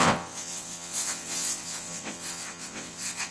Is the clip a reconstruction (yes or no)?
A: yes